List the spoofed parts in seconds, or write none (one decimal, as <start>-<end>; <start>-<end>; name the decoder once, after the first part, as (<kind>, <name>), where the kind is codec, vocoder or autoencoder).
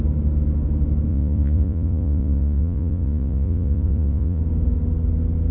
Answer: 1.1-4.4 (vocoder, Vocos)